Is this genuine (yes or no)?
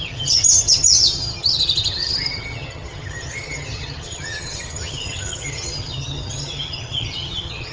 no